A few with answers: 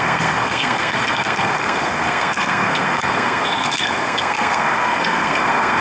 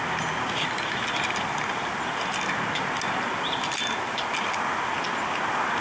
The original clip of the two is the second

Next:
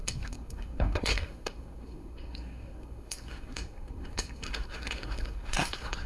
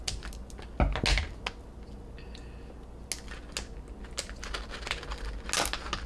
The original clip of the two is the second